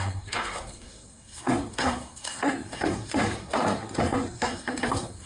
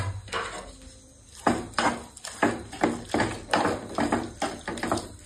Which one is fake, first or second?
first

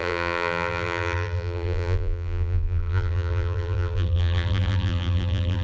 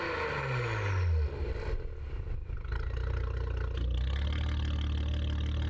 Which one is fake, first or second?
first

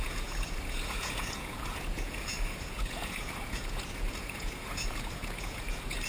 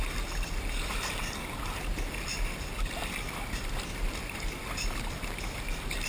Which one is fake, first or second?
first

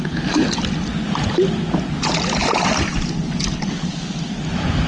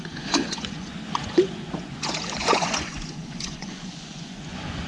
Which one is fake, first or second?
second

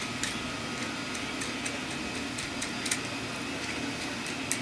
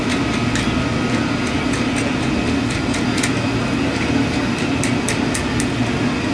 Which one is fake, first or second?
first